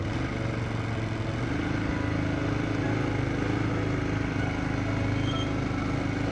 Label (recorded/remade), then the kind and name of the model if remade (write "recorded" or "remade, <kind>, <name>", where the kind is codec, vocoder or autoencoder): recorded